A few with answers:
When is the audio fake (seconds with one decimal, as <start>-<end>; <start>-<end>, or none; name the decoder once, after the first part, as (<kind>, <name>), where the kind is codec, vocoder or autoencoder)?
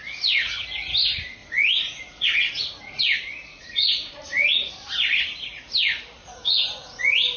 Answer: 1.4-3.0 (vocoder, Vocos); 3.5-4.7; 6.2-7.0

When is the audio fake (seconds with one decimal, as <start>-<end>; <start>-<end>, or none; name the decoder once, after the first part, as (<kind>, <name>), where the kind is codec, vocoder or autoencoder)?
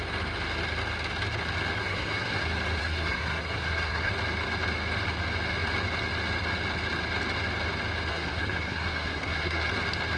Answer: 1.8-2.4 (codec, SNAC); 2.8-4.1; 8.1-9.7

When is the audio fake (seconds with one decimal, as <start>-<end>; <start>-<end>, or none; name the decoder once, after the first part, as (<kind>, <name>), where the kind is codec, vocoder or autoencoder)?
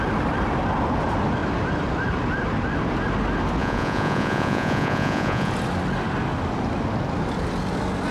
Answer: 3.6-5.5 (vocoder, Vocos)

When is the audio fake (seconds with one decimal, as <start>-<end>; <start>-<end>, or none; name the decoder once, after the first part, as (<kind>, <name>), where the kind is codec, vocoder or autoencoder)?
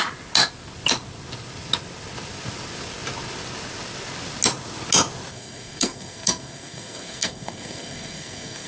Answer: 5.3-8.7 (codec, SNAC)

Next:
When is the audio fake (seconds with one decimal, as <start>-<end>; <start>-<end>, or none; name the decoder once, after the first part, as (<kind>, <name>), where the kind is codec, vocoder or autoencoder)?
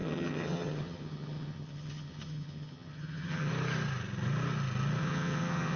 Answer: 0.0-3.5 (vocoder, HiFi-GAN); 5.0-5.8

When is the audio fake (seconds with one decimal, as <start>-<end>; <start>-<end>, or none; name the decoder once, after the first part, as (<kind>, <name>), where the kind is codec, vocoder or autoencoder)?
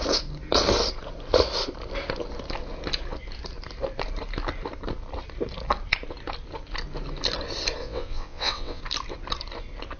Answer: 7.8-8.8 (vocoder, WaveNeXt)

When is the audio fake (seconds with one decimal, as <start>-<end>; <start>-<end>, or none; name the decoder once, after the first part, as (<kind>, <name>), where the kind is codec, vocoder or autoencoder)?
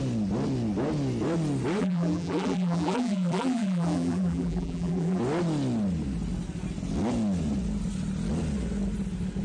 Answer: 1.8-5.2 (vocoder, BigVGAN v2)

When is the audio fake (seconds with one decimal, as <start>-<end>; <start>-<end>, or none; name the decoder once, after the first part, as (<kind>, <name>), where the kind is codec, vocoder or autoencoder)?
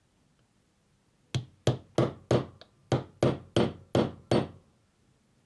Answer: none